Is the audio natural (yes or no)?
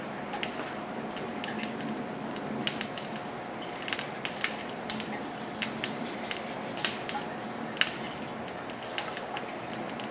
yes